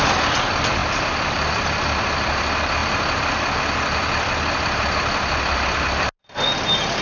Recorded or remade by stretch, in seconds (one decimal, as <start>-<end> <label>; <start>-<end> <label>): 0.0-7.0 recorded

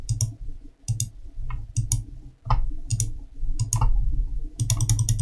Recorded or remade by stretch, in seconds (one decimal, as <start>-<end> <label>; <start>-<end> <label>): 0.0-5.2 recorded

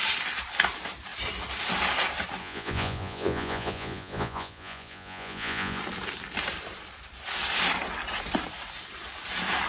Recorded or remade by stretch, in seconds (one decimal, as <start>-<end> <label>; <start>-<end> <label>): 0.0-2.4 recorded; 2.4-5.8 remade; 5.8-9.7 recorded

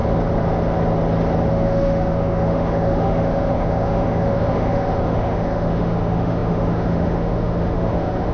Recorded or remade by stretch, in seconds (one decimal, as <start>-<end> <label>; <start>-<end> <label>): 0.0-1.5 recorded; 1.5-8.3 remade